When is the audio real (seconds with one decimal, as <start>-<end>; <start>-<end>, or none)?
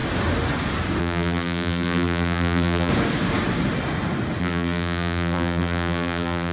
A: 0.0-1.0; 2.9-4.4